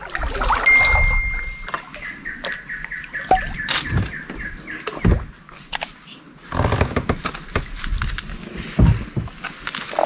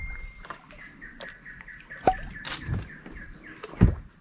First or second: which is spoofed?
second